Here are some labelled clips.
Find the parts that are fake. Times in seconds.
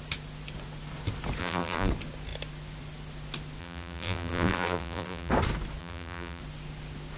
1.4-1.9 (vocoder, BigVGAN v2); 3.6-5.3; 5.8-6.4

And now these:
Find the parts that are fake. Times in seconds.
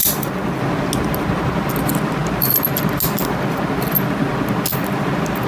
0.0-0.6 (vocoder, BigVGAN v2)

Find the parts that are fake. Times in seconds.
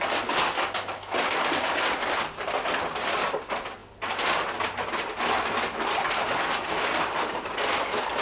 none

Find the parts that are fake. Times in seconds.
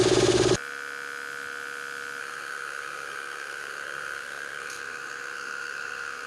2.2-6.3 (codec, SNAC)